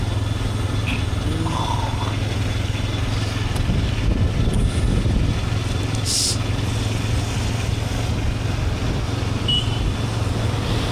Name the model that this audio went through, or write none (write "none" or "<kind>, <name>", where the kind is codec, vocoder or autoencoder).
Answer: none